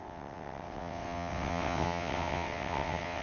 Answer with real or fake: fake